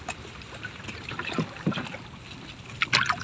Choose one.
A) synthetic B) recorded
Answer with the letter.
B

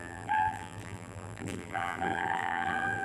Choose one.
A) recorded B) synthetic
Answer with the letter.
B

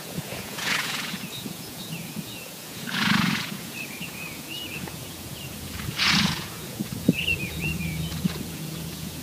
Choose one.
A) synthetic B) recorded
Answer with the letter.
A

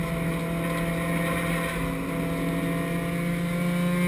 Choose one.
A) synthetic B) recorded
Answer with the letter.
B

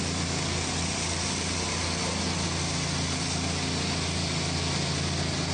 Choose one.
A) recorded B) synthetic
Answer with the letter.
A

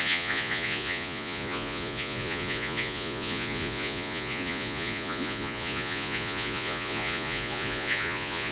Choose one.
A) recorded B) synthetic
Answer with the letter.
B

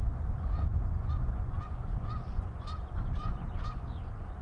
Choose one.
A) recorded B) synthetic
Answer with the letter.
B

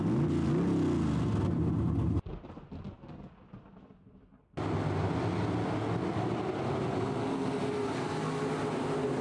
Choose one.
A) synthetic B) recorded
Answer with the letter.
B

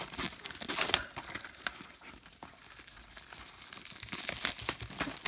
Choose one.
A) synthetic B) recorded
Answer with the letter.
B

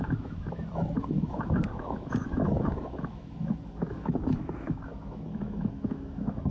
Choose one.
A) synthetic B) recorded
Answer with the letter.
A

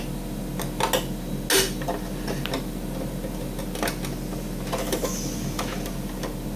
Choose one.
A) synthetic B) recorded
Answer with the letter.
B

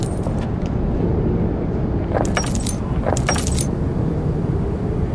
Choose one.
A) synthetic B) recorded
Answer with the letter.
B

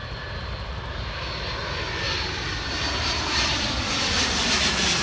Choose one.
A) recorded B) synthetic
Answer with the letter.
A